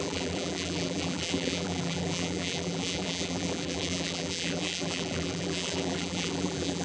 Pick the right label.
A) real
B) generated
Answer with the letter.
B